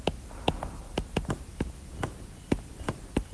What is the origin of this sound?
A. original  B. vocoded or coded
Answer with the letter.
A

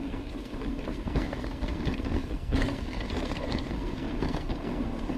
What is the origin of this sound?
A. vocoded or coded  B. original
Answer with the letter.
A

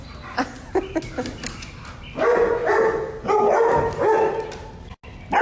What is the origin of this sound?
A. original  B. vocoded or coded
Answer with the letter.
A